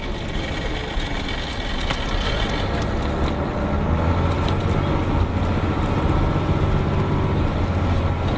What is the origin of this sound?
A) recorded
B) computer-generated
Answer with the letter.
A